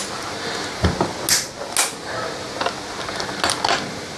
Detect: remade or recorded recorded